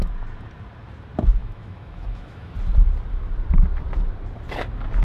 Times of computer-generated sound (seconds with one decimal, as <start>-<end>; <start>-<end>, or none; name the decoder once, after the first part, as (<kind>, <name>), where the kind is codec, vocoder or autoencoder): 1.4-2.5 (autoencoder, DAC-VAE)